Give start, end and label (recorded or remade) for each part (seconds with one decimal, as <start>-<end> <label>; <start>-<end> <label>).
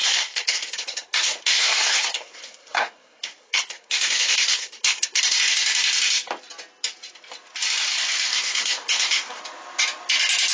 0.0-5.2 remade; 5.2-8.3 recorded; 8.3-9.4 remade; 9.4-10.5 recorded